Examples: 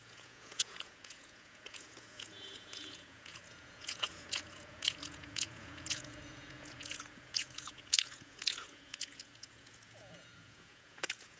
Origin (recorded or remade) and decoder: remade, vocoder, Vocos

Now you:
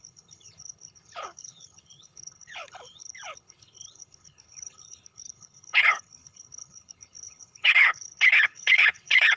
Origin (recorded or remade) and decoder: remade, codec, HILCodec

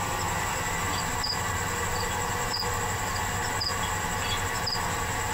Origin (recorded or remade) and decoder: recorded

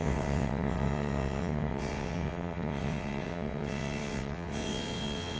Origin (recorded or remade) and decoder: remade, vocoder, WaveNeXt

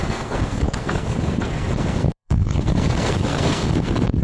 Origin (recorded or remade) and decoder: remade, codec, SNAC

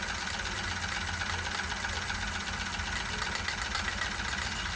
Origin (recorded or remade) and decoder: recorded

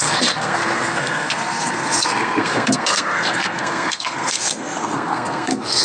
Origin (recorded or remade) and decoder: remade, codec, SNAC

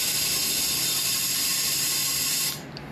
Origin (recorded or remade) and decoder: recorded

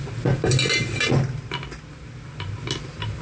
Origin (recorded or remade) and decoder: recorded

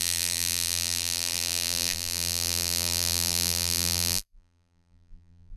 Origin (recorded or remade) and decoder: remade, vocoder, BigVGAN v2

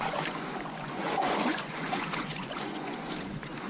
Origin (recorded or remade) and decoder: remade, vocoder, Vocos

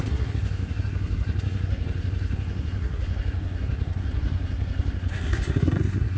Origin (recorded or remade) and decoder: remade, codec, SNAC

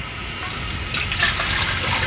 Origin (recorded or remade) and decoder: recorded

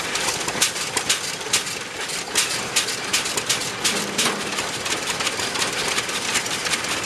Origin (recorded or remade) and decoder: recorded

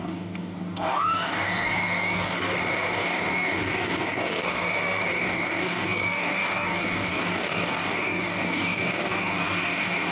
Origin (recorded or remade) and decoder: remade, codec, DAC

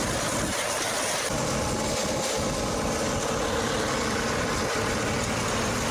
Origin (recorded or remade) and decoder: recorded